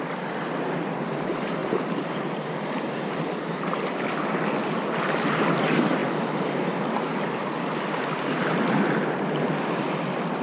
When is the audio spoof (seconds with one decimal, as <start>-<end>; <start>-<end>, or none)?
none